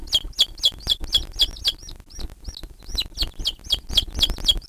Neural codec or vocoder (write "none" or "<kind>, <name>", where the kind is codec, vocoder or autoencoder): none